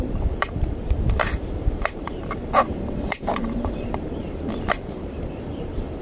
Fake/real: fake